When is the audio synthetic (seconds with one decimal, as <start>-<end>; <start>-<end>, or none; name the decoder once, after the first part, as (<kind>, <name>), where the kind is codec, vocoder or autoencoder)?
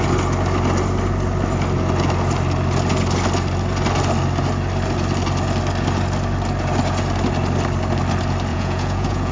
8.5-9.3 (vocoder, Vocos)